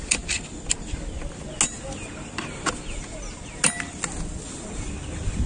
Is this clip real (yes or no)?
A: yes